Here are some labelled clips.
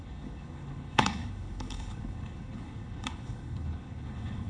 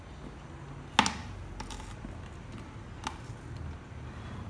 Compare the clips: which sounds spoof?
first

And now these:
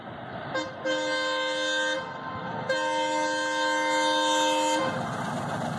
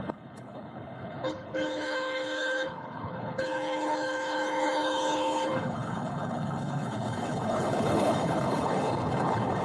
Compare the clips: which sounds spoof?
second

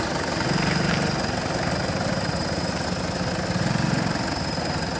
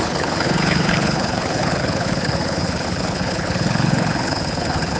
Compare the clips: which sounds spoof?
second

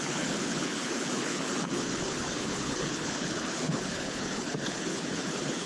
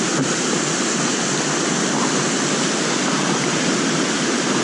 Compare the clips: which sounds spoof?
first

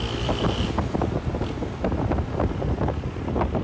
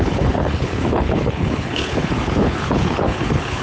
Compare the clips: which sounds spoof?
second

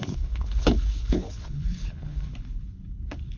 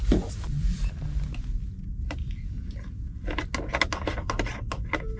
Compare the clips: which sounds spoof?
first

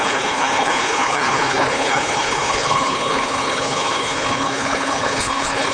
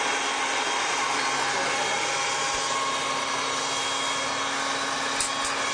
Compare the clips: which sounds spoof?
first